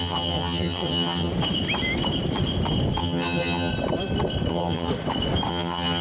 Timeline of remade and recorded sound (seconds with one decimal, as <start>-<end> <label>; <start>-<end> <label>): 0.0-1.3 remade; 1.3-3.0 recorded; 3.0-3.7 remade; 3.7-4.5 recorded; 4.5-4.9 remade; 4.9-5.5 recorded; 5.5-6.0 remade